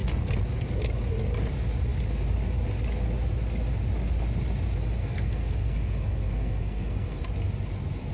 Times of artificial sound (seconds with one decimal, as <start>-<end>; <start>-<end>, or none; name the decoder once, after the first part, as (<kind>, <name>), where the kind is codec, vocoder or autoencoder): 5.0-7.2 (codec, SNAC)